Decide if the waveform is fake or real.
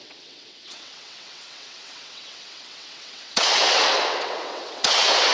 fake